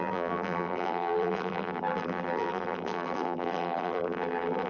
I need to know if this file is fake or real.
fake